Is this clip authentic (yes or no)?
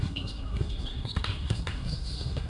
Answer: no